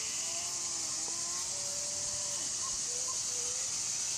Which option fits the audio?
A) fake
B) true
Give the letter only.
B